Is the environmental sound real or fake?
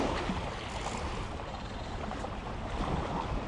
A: real